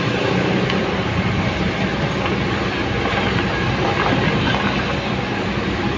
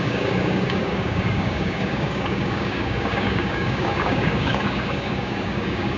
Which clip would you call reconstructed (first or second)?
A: second